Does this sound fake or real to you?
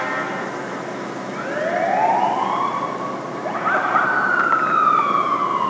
real